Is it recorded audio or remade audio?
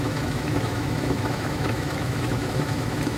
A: remade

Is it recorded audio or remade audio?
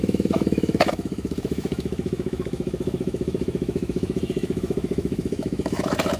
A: remade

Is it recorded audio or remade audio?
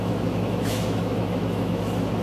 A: remade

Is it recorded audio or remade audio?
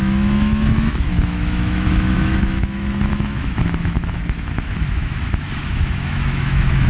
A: remade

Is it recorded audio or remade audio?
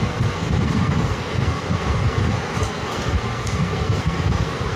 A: remade